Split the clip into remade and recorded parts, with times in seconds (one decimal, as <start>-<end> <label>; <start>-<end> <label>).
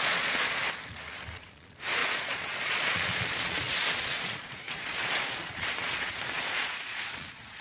0.0-0.6 remade; 0.6-1.3 recorded; 1.3-7.6 remade